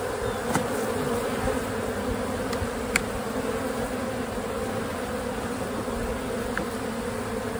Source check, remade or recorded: recorded